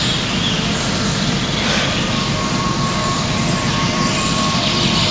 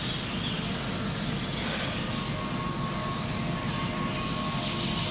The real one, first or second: second